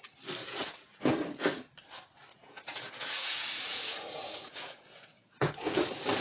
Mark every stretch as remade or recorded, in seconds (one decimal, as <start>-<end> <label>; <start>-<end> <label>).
0.0-0.4 recorded; 0.4-1.1 remade; 1.1-2.3 recorded; 2.3-5.7 remade; 5.7-6.2 recorded